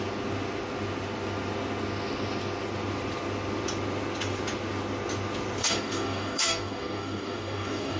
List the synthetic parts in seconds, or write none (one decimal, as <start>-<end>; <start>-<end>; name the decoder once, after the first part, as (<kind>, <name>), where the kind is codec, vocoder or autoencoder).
5.6-8.0 (codec, DAC)